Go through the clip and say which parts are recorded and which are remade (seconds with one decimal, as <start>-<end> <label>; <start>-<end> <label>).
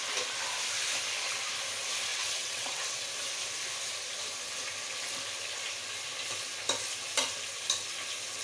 0.0-2.1 recorded; 2.1-3.1 remade; 3.1-8.4 recorded